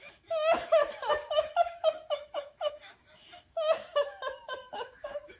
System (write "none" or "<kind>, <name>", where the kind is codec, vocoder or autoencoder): autoencoder, DAC-VAE